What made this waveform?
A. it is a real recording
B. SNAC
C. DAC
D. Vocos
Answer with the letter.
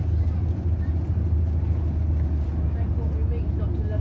A